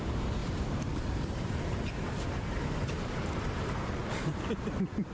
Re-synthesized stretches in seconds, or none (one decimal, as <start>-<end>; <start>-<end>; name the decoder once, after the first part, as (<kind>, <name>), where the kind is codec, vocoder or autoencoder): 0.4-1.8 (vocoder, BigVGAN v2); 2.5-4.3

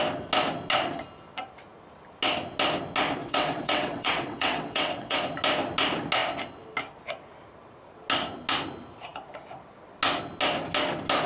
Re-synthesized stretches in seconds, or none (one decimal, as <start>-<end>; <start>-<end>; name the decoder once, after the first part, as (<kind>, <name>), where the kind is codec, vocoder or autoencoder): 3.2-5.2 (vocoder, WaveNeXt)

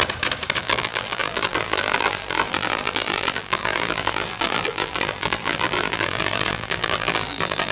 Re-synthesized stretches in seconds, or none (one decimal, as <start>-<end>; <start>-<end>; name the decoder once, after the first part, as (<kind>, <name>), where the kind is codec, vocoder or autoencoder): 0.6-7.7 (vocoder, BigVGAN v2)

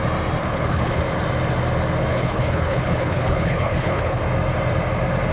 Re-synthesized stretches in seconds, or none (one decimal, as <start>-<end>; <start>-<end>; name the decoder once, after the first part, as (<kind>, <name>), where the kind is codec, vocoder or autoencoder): 0.4-1.0 (codec, HILCodec); 2.1-4.2

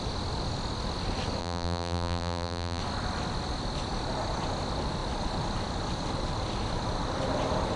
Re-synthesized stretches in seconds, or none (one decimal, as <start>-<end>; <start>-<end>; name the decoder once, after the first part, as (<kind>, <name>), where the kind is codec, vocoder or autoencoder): 1.4-2.8 (vocoder, BigVGAN v2)

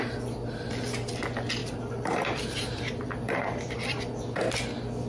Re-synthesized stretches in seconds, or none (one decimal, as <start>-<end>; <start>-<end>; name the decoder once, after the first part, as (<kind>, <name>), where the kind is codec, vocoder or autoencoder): 1.6-4.0 (vocoder, BigVGAN v2)

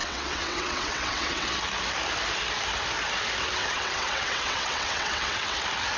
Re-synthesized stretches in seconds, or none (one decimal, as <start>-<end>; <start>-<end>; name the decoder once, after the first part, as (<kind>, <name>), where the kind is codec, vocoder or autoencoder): 0.0-1.6 (vocoder, WaveNeXt); 3.6-5.6

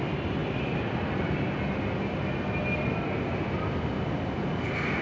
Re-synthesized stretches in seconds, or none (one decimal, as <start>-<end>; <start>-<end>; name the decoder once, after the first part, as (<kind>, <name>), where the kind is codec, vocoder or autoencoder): none